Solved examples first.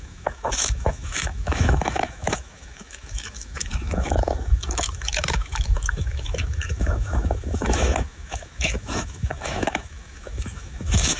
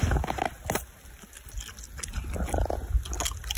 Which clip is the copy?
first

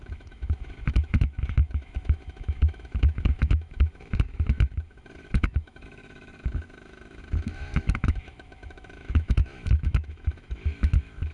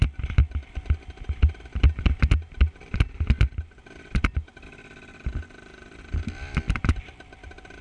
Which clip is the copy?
first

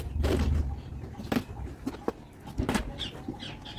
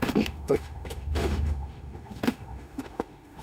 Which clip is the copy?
second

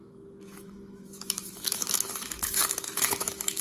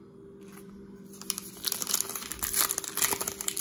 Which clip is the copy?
first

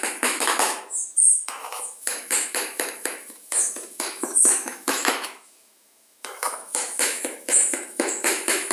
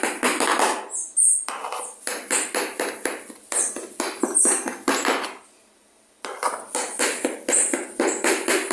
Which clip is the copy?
first